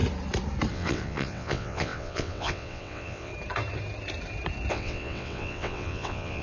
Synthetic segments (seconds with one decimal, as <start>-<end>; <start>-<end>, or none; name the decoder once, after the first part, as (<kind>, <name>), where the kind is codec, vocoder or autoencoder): 0.7-3.3 (vocoder, WaveNeXt); 4.7-6.4